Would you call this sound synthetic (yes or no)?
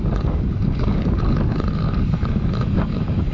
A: yes